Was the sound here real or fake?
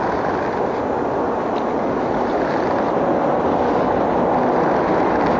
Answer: real